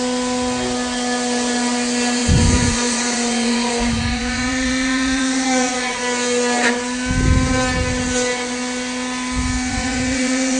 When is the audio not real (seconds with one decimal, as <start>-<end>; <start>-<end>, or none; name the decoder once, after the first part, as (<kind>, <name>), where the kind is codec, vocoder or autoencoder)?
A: 2.2-6.0 (vocoder, Vocos); 9.7-10.6